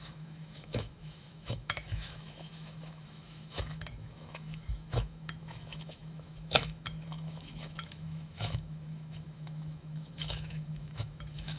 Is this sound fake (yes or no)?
yes